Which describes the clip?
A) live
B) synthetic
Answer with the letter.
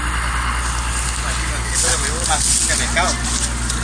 A